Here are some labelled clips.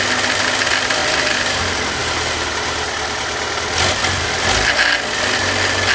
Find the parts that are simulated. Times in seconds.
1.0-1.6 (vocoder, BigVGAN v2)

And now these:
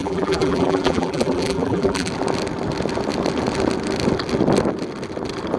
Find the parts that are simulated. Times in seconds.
0.0-2.1 (vocoder, BigVGAN v2)